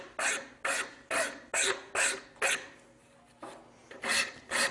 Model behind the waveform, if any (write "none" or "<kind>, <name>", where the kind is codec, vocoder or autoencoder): none